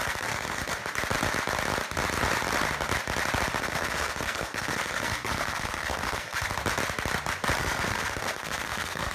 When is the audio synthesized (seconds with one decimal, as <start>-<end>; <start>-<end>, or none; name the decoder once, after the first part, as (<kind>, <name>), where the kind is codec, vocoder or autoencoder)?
0.0-0.8 (codec, SNAC); 3.6-6.5; 7.6-9.1